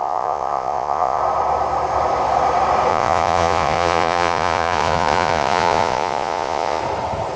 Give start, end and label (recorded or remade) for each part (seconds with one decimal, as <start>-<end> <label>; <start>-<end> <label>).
0.0-1.2 remade; 1.2-2.9 recorded; 2.9-6.8 remade; 6.8-7.4 recorded